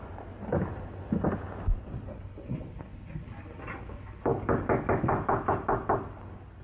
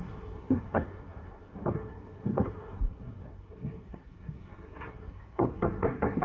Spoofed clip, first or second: second